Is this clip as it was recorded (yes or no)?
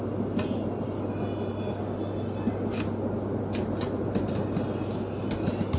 yes